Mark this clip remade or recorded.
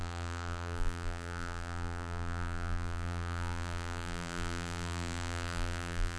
remade